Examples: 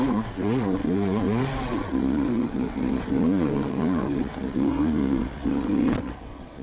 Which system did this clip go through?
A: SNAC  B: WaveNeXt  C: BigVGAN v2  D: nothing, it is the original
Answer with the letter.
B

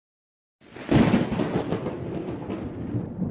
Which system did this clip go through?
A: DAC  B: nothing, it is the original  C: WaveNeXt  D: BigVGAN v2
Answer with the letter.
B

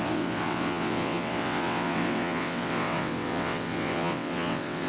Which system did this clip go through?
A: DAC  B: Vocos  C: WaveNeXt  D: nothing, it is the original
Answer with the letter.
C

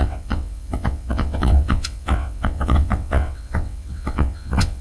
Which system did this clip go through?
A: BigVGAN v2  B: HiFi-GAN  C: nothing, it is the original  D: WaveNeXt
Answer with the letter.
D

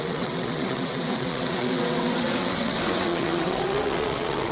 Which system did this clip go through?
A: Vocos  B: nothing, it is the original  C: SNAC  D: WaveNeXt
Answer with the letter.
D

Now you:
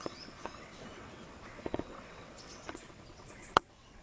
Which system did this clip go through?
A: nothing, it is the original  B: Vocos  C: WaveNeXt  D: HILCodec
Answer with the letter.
C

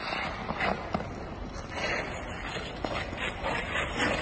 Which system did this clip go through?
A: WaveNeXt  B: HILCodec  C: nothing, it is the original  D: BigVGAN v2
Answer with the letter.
C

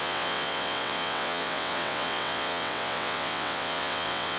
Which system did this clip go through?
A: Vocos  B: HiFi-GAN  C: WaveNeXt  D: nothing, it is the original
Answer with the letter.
C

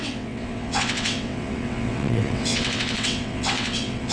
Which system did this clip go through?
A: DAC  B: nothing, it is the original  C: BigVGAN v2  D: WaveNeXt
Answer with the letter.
D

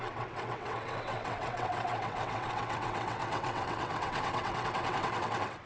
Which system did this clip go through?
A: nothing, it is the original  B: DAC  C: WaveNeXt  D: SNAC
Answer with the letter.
C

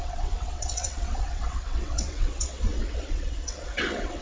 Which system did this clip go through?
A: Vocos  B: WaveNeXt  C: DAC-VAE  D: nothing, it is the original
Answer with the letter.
B